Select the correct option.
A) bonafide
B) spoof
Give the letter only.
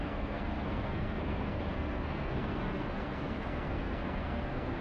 B